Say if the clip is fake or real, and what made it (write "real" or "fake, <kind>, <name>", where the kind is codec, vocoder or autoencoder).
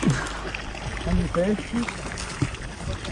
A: real